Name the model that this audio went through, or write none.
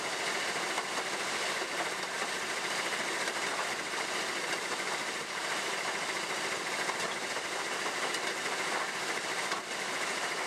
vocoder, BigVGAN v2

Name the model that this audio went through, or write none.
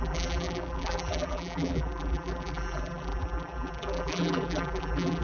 vocoder, BigVGAN v2